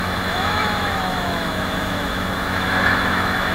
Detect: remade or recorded remade